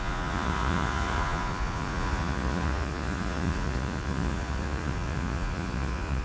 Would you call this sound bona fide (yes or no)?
no